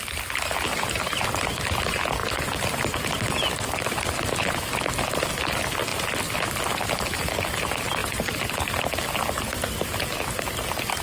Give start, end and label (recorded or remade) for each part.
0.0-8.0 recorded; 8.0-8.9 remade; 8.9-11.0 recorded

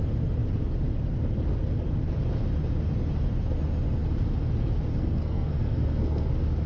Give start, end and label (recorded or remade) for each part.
0.0-4.9 recorded; 4.9-6.3 remade; 6.3-6.7 recorded

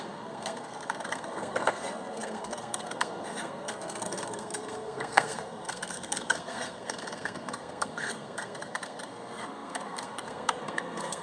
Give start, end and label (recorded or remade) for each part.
0.0-11.2 remade

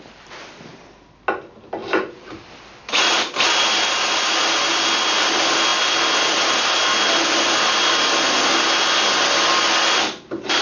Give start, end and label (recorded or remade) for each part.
0.0-1.8 recorded; 1.8-2.6 remade; 2.6-10.6 recorded

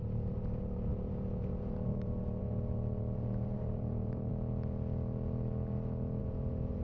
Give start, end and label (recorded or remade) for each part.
0.0-4.3 remade; 4.3-6.2 recorded; 6.2-6.8 remade